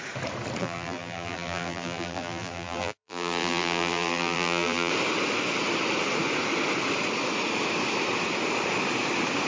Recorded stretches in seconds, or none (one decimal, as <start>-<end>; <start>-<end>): 0.0-0.6; 4.9-9.5